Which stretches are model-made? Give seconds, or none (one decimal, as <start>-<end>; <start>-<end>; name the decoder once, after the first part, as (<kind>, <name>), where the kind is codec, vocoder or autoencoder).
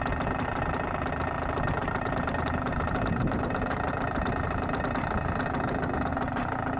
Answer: 1.8-3.9 (vocoder, BigVGAN v2)